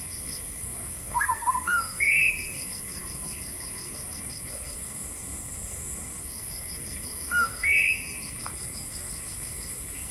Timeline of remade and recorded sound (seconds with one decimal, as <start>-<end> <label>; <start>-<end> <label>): 0.0-10.1 remade